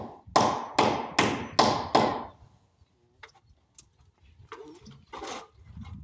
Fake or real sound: real